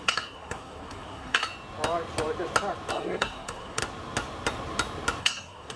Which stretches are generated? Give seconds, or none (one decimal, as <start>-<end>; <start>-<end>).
0.0-1.4; 2.9-3.8; 5.2-5.8